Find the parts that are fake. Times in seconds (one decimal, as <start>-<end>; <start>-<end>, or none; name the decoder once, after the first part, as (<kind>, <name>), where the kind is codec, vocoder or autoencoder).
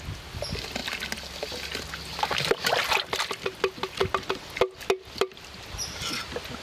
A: none